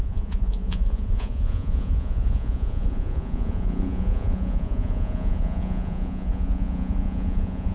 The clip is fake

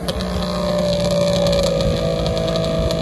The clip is real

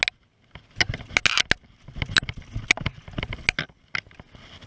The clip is real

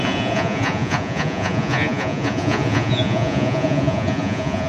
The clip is fake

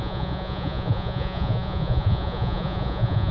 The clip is fake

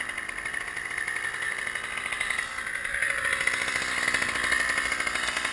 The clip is real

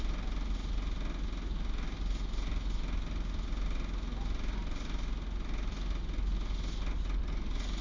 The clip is real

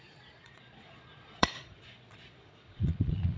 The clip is fake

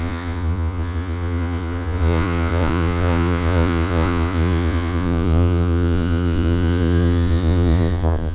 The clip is fake